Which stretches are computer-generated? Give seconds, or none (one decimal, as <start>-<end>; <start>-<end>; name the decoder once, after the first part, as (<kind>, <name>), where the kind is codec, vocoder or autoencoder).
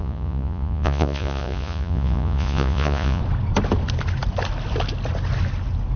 0.0-3.2 (vocoder, Vocos)